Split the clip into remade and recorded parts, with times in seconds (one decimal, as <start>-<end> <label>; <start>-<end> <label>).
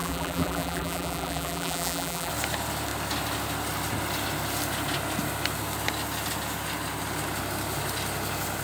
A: 0.0-2.3 remade; 2.3-8.6 recorded